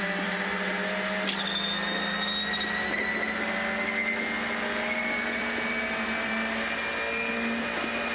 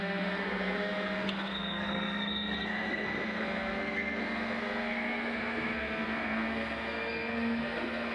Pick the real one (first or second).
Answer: first